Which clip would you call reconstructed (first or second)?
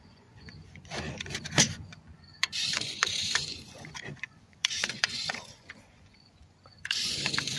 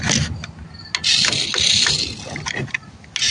first